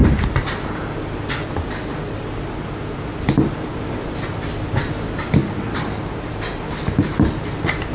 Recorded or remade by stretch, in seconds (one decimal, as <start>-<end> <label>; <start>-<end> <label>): 0.0-5.4 recorded; 5.4-6.4 remade; 6.4-7.9 recorded